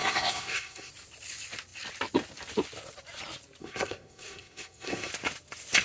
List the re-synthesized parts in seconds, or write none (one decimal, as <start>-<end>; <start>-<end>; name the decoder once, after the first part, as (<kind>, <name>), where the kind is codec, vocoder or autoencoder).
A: 0.0-0.9 (codec, SNAC); 3.6-5.1